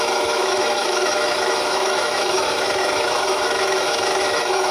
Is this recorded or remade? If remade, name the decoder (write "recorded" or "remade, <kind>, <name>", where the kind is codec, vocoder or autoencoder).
remade, autoencoder, DAC-VAE